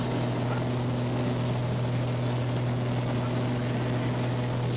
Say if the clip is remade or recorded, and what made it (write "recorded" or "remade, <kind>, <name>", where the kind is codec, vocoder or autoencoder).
recorded